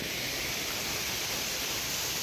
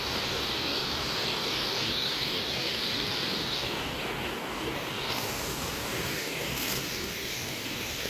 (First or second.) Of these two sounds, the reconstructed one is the second